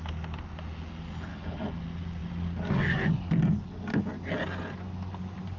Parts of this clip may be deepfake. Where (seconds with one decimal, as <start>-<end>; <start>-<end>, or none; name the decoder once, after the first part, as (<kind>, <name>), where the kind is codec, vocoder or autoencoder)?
1.3-1.8 (codec, HILCodec)